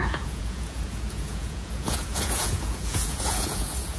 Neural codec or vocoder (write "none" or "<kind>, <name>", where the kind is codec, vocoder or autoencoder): vocoder, Vocos